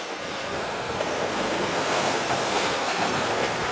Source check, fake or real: fake